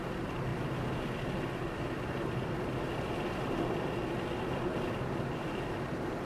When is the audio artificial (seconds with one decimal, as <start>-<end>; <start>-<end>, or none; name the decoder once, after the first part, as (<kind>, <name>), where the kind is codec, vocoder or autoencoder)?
none